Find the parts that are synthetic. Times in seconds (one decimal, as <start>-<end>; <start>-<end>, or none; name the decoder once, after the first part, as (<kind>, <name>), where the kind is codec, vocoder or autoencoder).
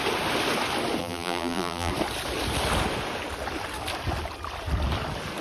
1.0-1.9 (vocoder, BigVGAN v2)